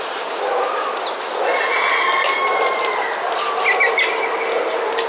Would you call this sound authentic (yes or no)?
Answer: yes